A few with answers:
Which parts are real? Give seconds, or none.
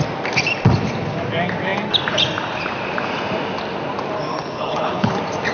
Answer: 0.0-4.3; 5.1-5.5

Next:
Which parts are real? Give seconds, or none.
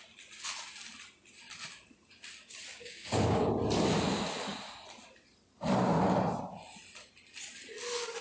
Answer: 0.0-2.7; 3.5-8.2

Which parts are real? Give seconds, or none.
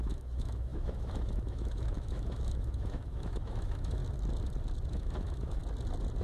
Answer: 4.0-4.9; 5.6-6.2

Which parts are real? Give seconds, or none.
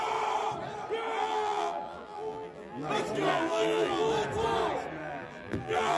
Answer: 0.0-1.2; 2.9-3.3; 4.1-5.0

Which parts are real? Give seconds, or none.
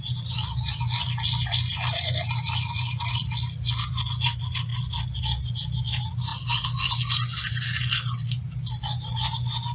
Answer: 0.0-9.7